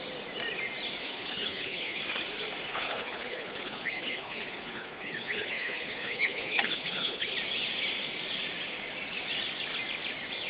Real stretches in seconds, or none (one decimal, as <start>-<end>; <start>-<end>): 0.0-1.0; 2.0-2.7; 7.3-10.5